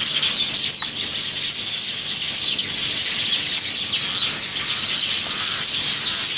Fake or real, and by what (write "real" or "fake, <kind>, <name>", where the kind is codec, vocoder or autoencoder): real